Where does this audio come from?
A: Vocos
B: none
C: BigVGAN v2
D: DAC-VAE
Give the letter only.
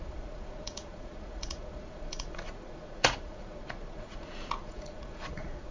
A